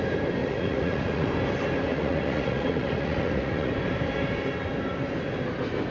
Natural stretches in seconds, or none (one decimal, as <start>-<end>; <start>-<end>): 0.0-0.4; 1.3-1.9; 3.7-5.9